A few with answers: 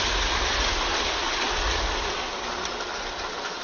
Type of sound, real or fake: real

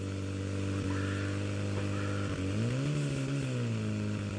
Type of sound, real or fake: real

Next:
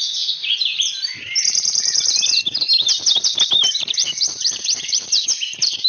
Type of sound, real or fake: fake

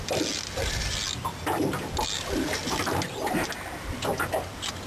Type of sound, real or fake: real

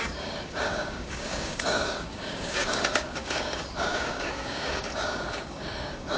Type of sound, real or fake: fake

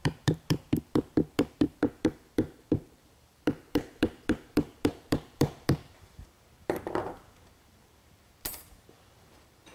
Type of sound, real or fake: fake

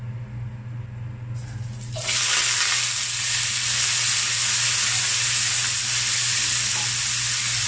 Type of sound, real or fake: real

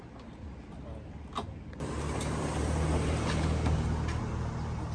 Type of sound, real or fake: real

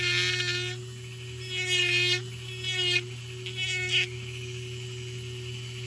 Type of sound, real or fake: real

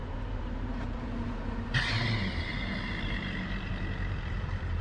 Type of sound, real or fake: fake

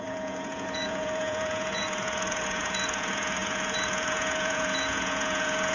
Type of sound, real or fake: fake